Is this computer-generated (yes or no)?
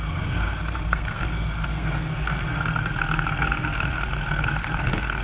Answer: yes